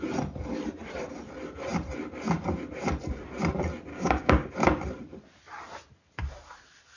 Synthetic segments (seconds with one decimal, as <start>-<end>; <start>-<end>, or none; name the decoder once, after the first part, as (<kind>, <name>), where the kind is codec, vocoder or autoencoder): 3.9-4.5 (codec, DAC)